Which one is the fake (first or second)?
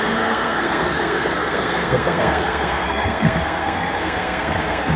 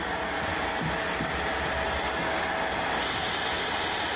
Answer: first